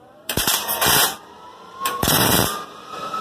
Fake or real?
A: fake